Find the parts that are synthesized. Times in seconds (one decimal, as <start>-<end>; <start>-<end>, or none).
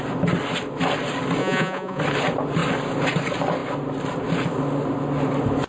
1.4-2.0